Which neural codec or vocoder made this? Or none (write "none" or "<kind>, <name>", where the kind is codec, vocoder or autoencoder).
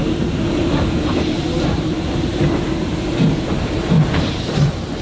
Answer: vocoder, BigVGAN v2